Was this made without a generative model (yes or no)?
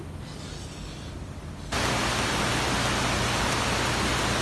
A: yes